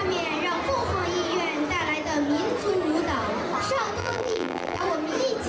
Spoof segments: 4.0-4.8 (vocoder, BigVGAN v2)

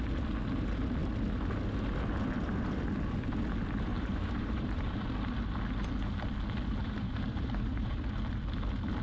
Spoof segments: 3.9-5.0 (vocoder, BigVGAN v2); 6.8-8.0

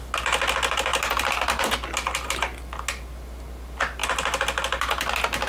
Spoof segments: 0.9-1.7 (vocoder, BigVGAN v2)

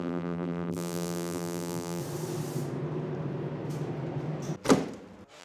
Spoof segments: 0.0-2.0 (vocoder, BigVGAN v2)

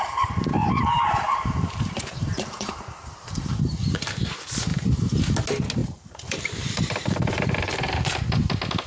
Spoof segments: 0.6-4.1 (vocoder, BigVGAN v2); 4.7-5.3; 5.8-8.0